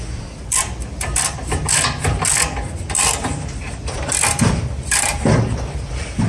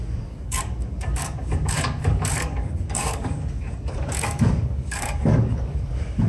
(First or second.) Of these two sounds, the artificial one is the second